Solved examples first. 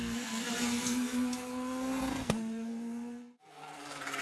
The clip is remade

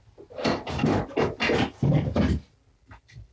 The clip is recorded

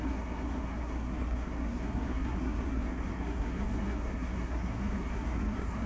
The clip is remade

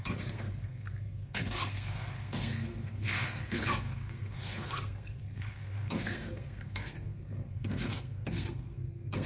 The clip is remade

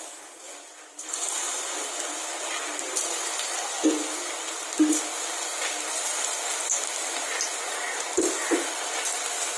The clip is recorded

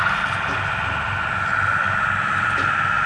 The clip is recorded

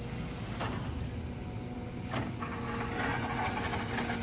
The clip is recorded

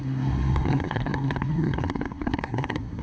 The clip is remade